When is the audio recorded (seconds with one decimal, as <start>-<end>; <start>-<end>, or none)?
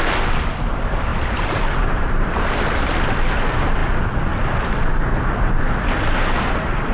0.0-1.1; 2.5-6.9